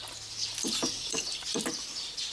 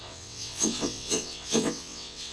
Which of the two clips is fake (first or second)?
second